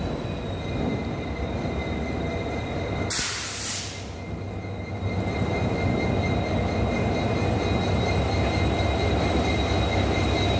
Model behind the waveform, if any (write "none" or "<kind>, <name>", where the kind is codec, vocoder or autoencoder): none